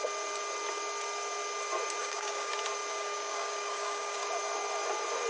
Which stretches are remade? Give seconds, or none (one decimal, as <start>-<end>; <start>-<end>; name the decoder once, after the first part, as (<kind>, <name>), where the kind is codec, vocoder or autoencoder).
2.0-2.5 (codec, DAC); 2.9-4.2